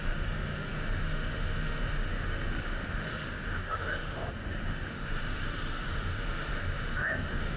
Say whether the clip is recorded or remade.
remade